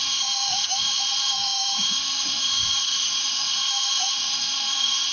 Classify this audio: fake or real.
fake